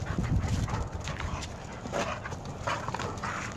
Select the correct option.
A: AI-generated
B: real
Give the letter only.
B